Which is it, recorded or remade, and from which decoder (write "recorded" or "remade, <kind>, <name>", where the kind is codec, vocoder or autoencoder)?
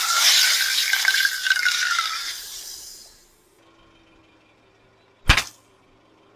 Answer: recorded